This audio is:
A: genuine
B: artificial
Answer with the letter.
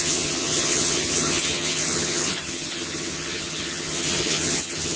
B